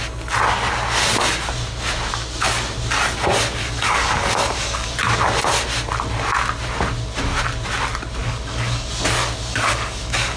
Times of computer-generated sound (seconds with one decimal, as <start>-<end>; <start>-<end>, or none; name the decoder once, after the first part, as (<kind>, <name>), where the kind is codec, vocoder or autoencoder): 3.6-4.9 (codec, DAC); 8.2-8.9; 9.5-10.4